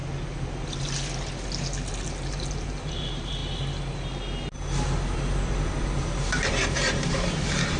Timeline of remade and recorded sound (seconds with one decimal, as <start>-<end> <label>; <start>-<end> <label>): 0.0-1.9 recorded; 1.9-3.4 remade; 3.4-5.3 recorded; 5.3-7.8 remade